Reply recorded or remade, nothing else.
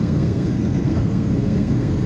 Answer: remade